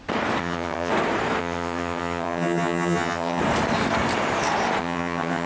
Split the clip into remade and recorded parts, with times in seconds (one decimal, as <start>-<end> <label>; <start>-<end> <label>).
0.0-0.4 recorded; 0.4-0.9 remade; 0.9-1.4 recorded; 1.4-3.4 remade; 3.4-4.8 recorded; 4.8-5.5 remade